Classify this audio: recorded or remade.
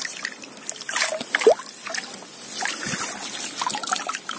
recorded